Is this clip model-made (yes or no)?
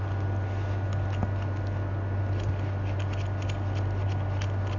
no